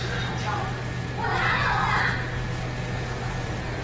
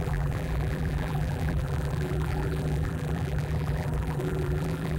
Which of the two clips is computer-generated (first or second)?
second